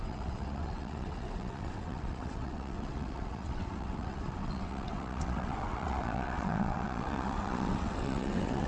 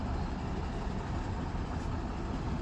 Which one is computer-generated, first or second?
first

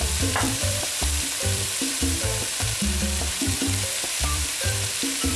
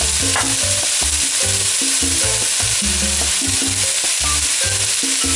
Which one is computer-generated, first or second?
first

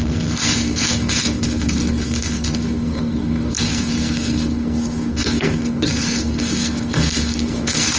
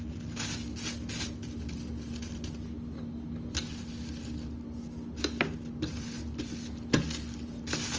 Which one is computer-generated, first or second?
first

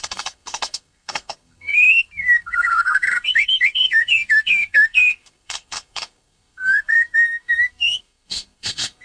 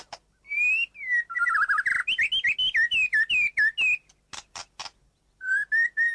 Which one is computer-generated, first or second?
first